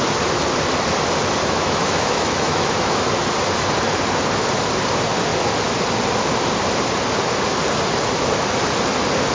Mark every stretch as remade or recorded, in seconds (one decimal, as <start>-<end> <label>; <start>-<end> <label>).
0.0-1.4 recorded; 1.4-3.0 remade; 3.0-9.3 recorded